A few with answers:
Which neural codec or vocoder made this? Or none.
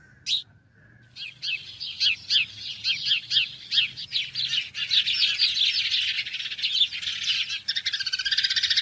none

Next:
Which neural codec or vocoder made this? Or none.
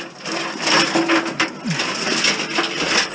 none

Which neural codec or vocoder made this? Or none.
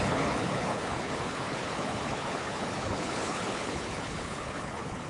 codec, HILCodec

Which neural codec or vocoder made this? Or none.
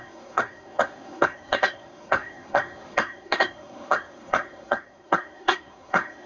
codec, SNAC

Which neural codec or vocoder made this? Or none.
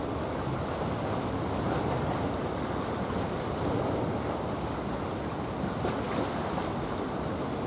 none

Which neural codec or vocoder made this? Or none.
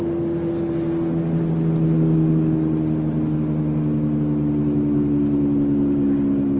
none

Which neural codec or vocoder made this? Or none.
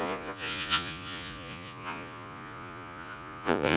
vocoder, Vocos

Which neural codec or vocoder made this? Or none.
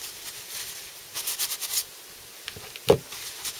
none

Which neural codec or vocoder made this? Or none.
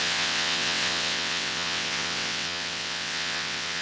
vocoder, WaveNeXt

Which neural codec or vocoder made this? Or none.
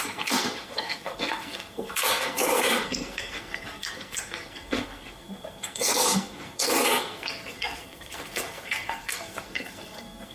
codec, SNAC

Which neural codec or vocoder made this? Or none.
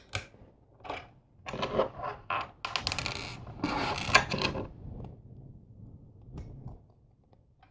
none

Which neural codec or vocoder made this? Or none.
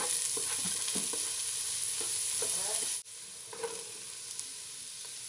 none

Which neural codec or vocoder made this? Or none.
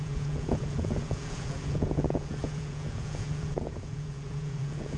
vocoder, Vocos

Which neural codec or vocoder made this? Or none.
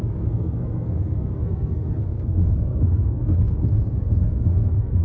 codec, SNAC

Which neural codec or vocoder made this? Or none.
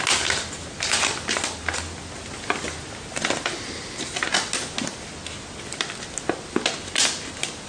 none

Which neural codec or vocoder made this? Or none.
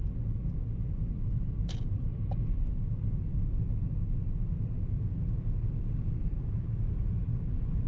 none